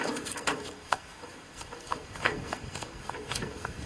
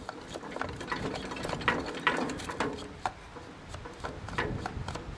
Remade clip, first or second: first